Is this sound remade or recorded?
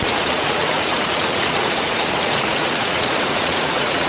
remade